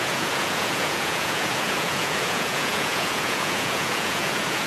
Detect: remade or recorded remade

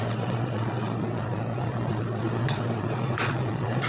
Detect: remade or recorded remade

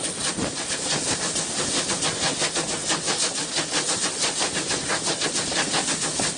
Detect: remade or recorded recorded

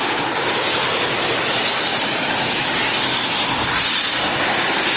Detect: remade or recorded recorded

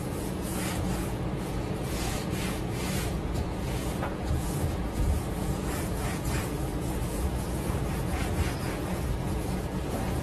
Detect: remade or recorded remade